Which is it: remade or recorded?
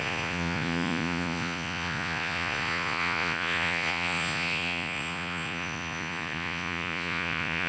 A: remade